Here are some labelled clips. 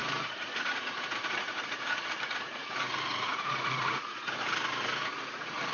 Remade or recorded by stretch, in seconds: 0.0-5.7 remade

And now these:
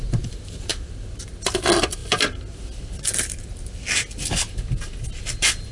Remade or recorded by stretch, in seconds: 0.0-5.7 recorded

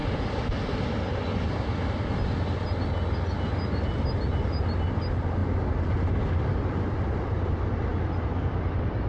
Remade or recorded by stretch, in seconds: 0.0-9.1 recorded

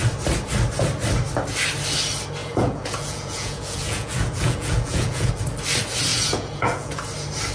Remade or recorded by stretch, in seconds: 0.0-2.4 recorded; 2.4-5.3 remade; 5.3-6.1 recorded; 6.1-7.0 remade; 7.0-7.5 recorded

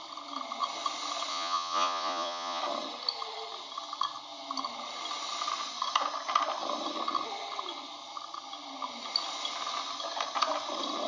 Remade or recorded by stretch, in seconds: 0.0-1.3 recorded; 1.3-2.6 remade; 2.6-11.1 recorded